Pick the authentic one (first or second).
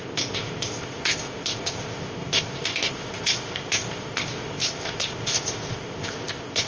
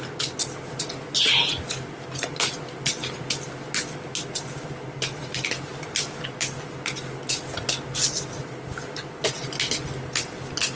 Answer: second